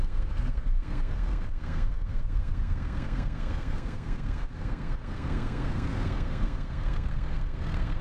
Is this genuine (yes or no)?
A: no